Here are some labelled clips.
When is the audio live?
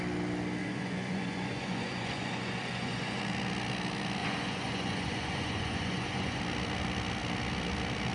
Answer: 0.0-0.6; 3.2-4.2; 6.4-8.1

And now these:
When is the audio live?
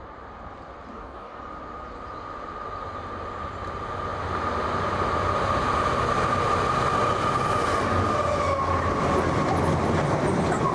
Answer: 0.0-0.9; 1.4-10.7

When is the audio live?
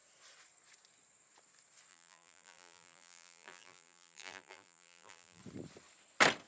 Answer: 0.0-1.9; 5.4-6.5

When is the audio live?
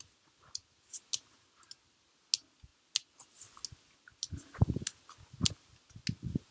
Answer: 0.0-6.5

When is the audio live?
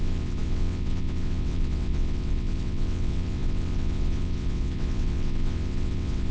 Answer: none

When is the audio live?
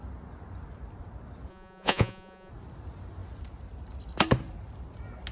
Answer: 0.0-1.5; 2.5-5.3